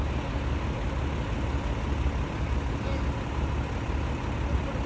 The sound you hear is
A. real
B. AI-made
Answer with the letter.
A